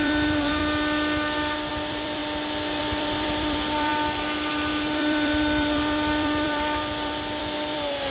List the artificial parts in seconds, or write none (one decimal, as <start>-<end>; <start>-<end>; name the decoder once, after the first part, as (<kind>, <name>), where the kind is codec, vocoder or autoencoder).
0.0-0.6 (vocoder, BigVGAN v2); 1.7-2.2; 2.8-3.9; 4.5-8.1